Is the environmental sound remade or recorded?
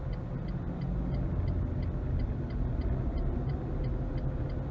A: recorded